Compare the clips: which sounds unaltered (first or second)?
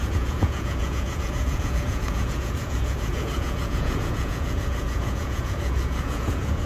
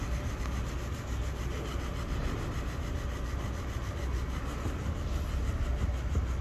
second